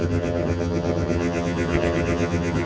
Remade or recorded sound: remade